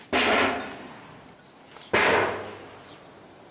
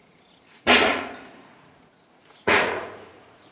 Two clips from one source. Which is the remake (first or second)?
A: second